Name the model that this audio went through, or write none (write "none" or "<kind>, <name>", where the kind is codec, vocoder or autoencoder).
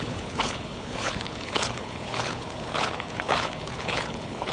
codec, HILCodec